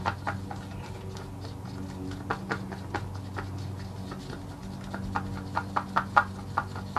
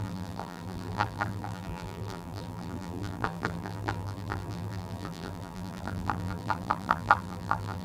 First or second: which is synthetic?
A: second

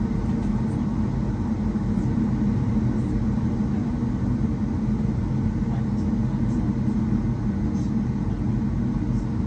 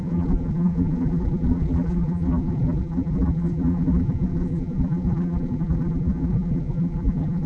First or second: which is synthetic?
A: second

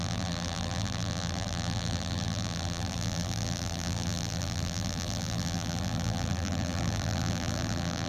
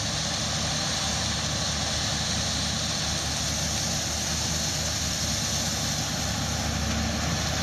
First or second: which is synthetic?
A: first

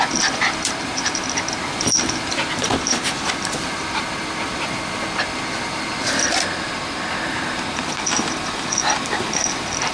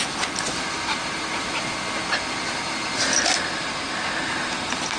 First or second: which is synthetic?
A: first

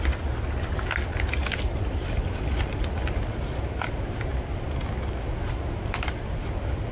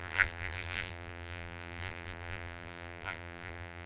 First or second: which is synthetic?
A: second